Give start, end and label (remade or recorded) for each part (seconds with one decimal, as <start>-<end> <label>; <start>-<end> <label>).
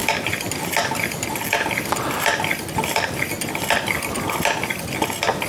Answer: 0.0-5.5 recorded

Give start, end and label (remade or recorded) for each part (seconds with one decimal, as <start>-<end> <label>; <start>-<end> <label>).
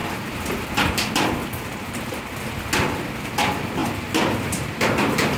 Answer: 0.0-3.8 recorded; 3.8-5.4 remade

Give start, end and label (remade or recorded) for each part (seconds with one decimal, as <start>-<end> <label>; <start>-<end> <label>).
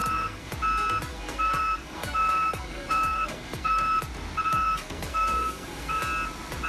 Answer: 0.0-0.5 remade; 0.5-1.1 recorded; 1.1-4.0 remade; 4.0-4.5 recorded; 4.5-6.0 remade; 6.0-6.7 recorded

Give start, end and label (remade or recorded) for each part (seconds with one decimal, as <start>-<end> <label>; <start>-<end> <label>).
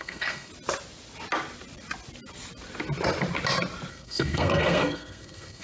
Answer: 0.0-0.5 remade; 0.5-3.9 recorded; 3.9-5.6 remade